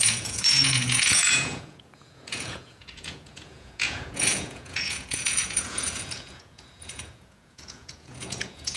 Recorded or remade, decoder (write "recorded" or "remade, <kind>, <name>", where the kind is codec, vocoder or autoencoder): remade, vocoder, Vocos